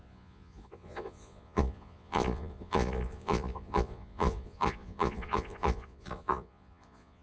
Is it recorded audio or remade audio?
remade